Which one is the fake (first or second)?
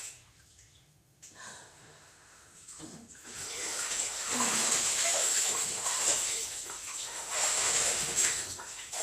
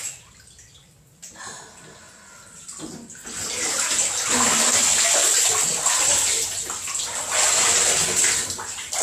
first